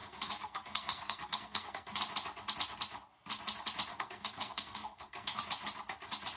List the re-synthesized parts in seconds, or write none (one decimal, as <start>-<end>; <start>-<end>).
0.0-2.0; 3.9-5.4